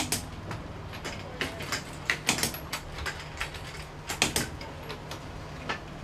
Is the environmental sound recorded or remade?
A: recorded